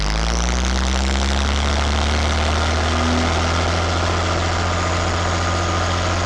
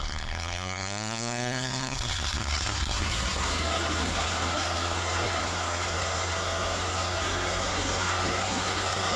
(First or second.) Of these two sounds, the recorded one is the first